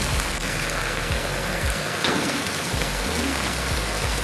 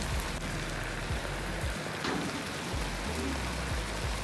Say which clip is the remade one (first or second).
first